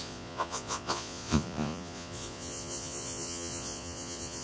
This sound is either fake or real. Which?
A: fake